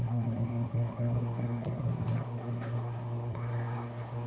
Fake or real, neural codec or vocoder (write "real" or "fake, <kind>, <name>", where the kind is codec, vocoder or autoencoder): fake, codec, SNAC